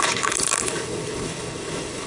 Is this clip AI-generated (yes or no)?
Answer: yes